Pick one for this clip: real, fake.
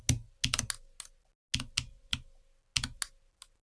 real